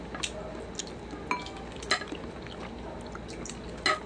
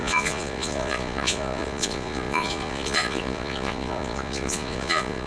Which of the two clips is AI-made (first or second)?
second